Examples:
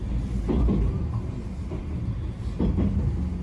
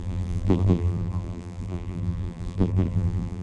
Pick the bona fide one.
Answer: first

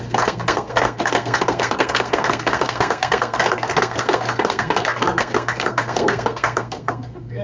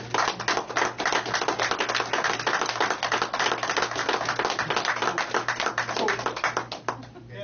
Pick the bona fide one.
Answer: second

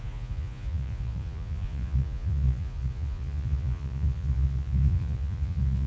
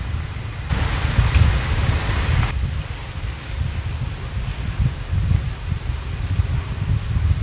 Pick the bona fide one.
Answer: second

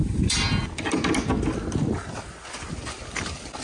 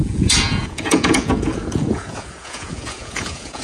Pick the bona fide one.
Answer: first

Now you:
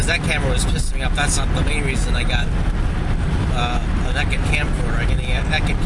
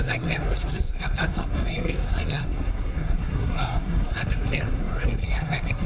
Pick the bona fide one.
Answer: first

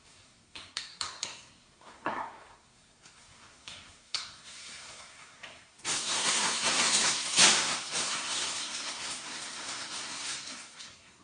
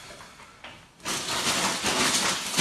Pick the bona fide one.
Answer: second